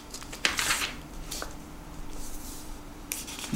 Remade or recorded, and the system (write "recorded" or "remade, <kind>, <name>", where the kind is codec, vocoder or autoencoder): remade, vocoder, BigVGAN v2